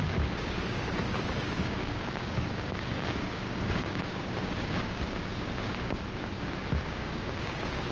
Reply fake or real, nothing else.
fake